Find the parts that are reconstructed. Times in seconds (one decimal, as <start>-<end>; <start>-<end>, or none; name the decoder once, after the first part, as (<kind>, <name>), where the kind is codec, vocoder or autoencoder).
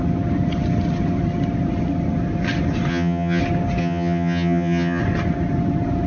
2.9-3.4 (vocoder, HiFi-GAN); 3.8-5.0